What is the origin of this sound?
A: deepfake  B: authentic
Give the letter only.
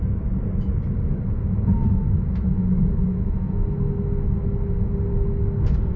B